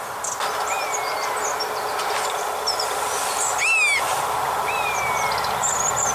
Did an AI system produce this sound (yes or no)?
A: no